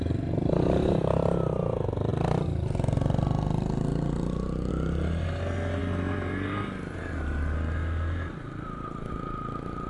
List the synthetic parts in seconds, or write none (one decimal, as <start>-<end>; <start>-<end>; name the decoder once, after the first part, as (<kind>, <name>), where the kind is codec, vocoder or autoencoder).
none